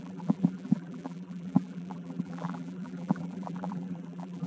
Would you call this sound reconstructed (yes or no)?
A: yes